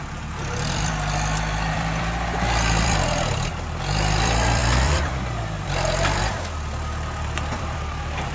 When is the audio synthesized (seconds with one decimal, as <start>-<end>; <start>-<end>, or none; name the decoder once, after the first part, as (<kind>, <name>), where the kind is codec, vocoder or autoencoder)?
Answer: 0.0-8.3 (vocoder, BigVGAN v2)